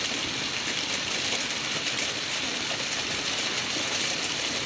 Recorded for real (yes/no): yes